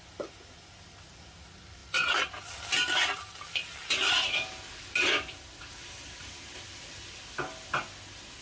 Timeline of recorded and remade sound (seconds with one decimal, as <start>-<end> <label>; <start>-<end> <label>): 0.0-8.4 recorded